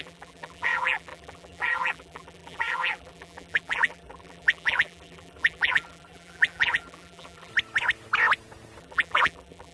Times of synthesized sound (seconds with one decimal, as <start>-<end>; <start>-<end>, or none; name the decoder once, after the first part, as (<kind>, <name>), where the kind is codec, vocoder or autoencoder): 0.0-7.5 (vocoder, BigVGAN v2); 8.8-9.7